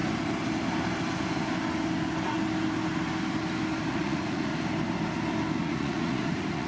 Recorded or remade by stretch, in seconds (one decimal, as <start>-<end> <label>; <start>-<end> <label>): 0.0-3.9 recorded; 3.9-4.5 remade; 4.5-5.6 recorded; 5.6-6.7 remade